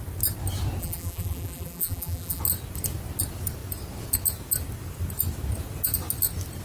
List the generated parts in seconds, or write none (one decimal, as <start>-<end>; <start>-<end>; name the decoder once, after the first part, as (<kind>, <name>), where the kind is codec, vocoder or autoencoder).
0.8-2.4 (vocoder, BigVGAN v2)